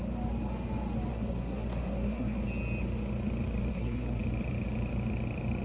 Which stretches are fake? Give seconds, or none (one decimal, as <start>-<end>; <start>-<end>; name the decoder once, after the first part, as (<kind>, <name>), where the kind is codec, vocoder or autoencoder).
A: 1.1-2.4 (codec, SNAC); 3.7-4.2